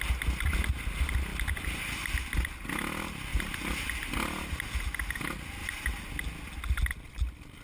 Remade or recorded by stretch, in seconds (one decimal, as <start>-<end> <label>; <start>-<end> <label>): 0.0-1.3 recorded; 1.3-2.2 remade; 2.2-3.3 recorded; 3.3-4.0 remade; 4.0-5.6 recorded; 5.6-6.2 remade; 6.2-7.6 recorded